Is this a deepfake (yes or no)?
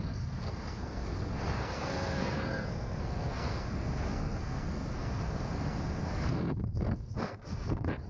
yes